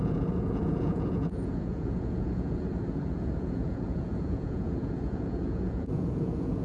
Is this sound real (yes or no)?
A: no